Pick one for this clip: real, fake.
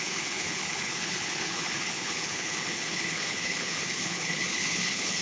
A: fake